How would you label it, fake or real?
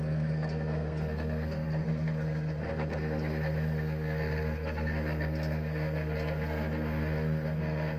fake